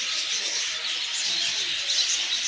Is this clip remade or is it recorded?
recorded